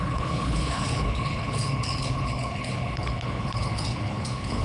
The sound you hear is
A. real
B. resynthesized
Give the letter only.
B